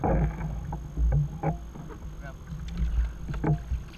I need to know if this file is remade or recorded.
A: recorded